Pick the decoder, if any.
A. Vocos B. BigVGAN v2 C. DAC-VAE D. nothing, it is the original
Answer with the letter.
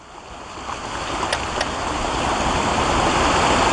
D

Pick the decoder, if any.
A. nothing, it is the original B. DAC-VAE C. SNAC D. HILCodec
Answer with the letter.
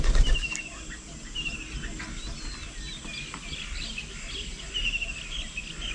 A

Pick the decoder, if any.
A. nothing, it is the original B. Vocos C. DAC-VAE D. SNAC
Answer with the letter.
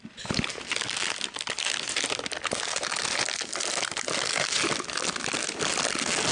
A